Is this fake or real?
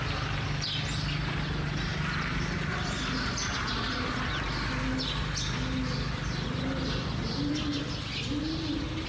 real